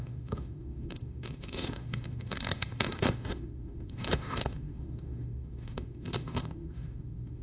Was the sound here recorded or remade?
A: remade